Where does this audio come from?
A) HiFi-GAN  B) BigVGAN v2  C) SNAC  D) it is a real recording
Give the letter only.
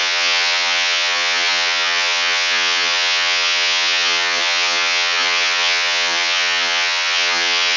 A